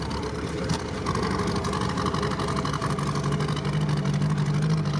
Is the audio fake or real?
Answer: real